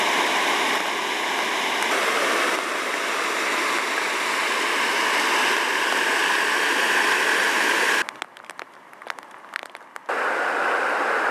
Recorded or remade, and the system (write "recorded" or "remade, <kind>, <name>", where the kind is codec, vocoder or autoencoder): recorded